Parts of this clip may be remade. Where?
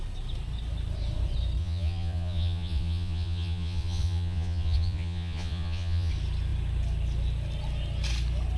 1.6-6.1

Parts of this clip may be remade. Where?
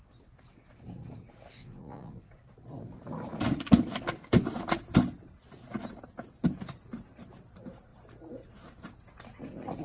1.6-2.3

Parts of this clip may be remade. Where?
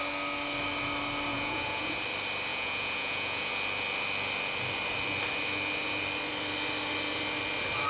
1.3-1.9; 2.5-3.5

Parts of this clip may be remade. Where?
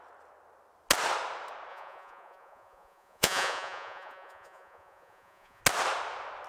1.7-5.6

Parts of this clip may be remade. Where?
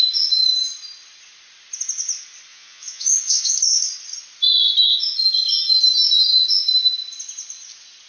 2.5-3.5